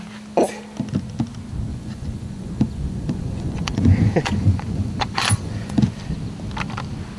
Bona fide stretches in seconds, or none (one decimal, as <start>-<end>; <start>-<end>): 0.0-1.7; 5.8-7.2